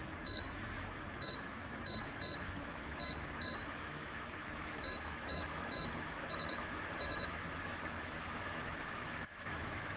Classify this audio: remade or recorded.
remade